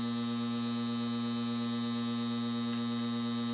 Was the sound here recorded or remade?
recorded